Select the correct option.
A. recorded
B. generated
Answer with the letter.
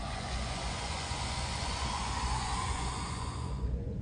B